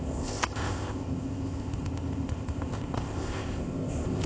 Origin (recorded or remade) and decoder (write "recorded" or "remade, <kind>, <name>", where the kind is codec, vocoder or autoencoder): remade, codec, ZipCodec